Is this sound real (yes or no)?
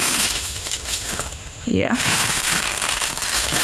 no